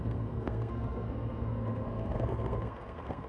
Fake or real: fake